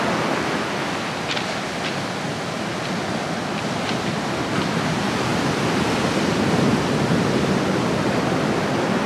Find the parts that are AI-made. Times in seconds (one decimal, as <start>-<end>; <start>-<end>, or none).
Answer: none